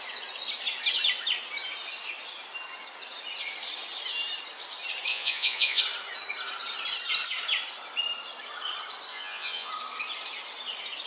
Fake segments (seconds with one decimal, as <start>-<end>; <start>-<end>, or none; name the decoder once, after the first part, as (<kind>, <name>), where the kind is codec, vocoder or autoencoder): 5.1-5.8 (vocoder, Vocos); 9.1-9.7